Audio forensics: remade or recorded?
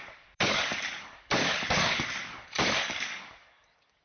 remade